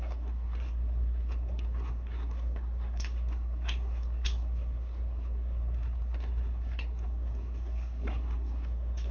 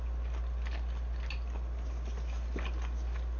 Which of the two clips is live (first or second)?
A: second